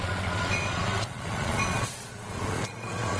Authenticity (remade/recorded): remade